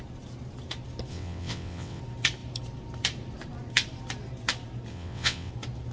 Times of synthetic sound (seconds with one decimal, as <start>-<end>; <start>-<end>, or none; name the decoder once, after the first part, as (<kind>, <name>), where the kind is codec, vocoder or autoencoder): 1.1-2.0 (vocoder, WaveNeXt); 4.9-5.5